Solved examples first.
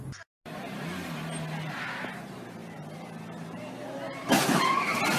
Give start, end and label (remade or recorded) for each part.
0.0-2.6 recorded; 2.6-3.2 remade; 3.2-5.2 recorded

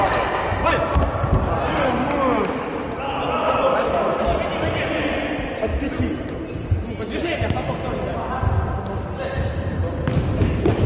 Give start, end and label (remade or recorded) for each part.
0.0-3.4 recorded; 3.4-4.1 remade; 4.1-5.7 recorded; 5.7-7.0 remade; 7.0-10.9 recorded

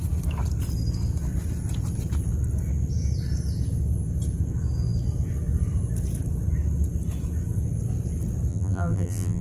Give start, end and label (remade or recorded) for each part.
0.0-8.5 recorded; 8.5-9.4 remade